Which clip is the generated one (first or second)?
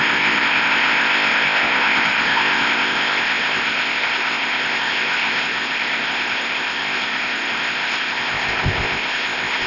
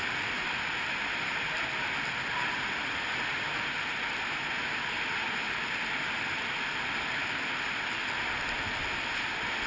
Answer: first